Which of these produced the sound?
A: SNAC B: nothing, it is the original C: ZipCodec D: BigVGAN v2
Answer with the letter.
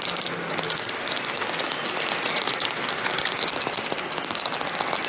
B